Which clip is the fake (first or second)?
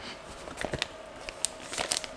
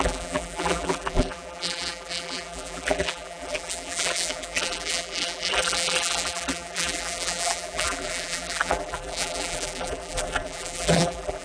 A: second